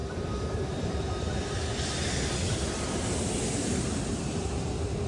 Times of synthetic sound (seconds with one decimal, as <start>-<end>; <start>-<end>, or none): 0.0-2.7